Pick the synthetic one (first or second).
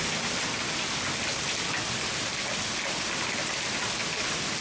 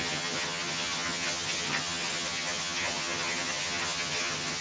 second